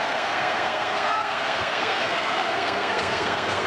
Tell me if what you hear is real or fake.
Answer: fake